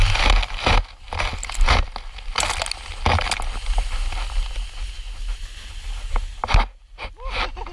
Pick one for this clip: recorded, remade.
recorded